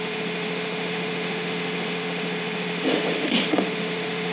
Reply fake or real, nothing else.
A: fake